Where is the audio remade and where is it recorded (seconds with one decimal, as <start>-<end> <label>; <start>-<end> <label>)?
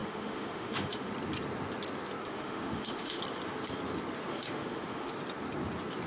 0.0-1.1 remade; 1.1-2.2 recorded; 2.2-3.2 remade; 3.2-4.3 recorded; 4.3-5.1 remade; 5.1-6.1 recorded